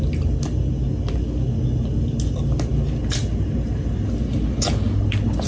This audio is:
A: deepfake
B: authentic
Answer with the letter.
B